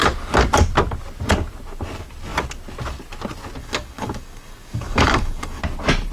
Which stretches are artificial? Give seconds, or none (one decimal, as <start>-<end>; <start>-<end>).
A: 3.6-5.6